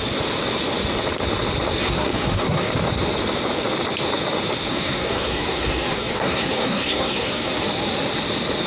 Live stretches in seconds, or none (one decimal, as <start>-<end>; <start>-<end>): 0.0-1.8; 2.7-4.7; 7.6-8.7